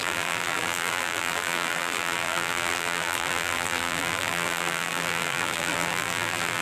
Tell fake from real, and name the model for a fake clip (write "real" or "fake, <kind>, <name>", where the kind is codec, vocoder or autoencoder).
fake, vocoder, BigVGAN v2